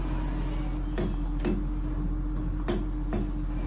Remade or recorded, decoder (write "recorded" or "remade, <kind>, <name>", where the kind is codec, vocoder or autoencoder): recorded